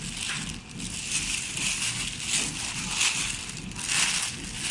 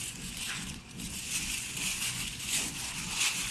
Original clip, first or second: first